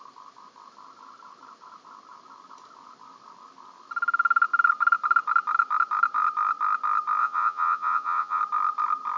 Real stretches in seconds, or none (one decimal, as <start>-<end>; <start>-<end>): 0.0-7.2; 8.4-9.2